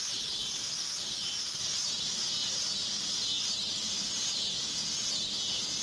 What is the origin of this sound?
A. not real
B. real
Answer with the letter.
B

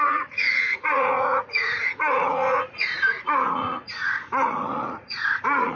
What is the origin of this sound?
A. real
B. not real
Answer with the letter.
B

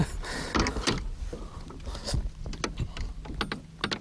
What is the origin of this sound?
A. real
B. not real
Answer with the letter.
A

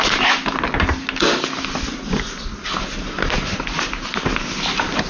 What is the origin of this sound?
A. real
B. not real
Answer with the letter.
A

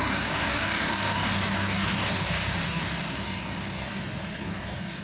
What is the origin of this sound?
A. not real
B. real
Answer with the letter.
A